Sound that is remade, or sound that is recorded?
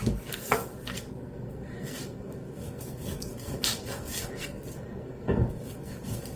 remade